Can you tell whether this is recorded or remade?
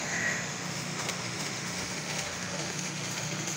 remade